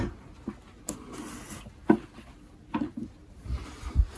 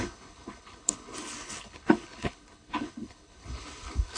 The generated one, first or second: second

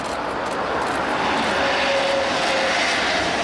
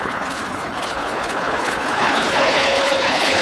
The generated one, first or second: second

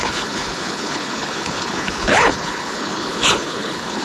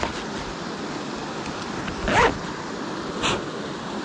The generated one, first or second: first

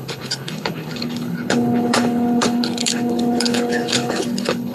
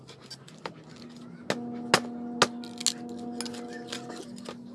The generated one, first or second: first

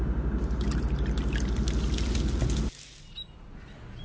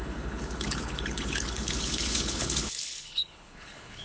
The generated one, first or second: second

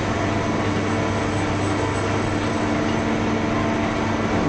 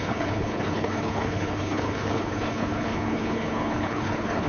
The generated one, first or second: second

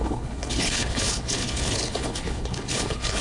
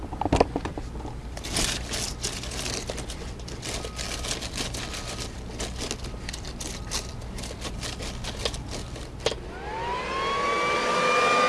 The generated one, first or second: first